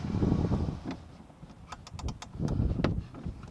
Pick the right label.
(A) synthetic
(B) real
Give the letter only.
B